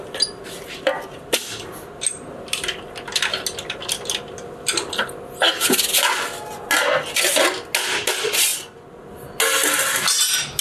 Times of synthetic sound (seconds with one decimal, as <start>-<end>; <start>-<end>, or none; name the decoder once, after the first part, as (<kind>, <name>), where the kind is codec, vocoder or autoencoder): none